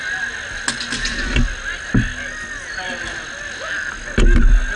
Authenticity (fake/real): real